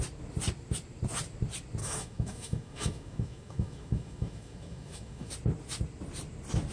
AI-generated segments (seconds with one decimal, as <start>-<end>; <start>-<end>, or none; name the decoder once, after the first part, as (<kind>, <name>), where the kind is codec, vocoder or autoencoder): 1.8-5.3 (autoencoder, DAC-VAE)